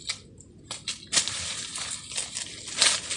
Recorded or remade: recorded